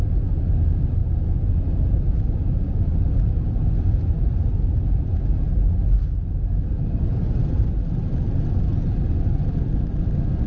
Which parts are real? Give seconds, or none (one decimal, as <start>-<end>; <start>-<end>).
0.0-10.5